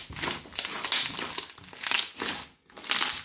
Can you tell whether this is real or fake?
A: real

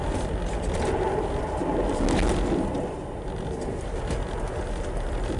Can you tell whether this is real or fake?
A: real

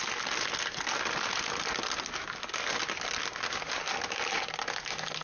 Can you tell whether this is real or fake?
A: real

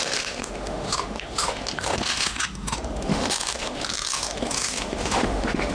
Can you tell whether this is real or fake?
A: fake